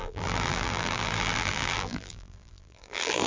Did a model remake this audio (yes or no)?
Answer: yes